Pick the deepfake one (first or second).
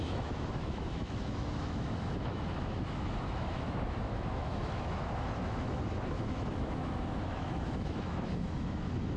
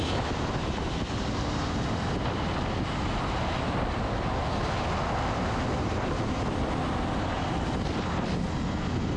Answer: first